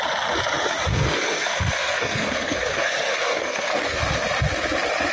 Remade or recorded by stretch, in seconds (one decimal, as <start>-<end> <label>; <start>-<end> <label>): 0.0-0.9 recorded; 0.9-4.0 remade; 4.0-5.1 recorded

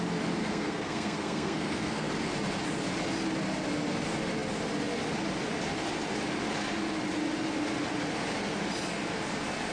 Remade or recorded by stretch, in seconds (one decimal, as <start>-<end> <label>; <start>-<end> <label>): 0.0-0.4 recorded; 0.4-2.1 remade; 2.1-9.7 recorded

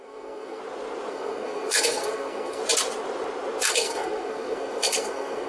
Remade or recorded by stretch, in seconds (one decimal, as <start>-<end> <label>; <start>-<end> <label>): 0.0-0.6 remade; 0.6-1.1 recorded; 1.1-2.6 remade; 2.6-3.7 recorded; 3.7-5.5 remade

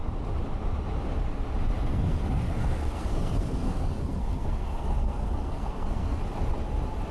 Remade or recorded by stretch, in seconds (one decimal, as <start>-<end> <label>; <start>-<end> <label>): 0.0-1.9 recorded; 1.9-6.2 remade; 6.2-7.1 recorded

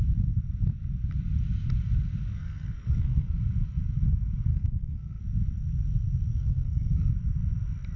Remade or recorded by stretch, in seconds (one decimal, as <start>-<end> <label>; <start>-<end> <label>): 0.0-2.3 recorded; 2.3-3.4 remade; 3.4-4.5 recorded; 4.5-5.2 remade; 5.2-6.3 recorded; 6.3-7.1 remade; 7.1-8.0 recorded